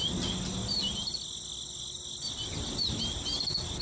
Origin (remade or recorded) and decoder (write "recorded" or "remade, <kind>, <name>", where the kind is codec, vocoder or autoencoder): recorded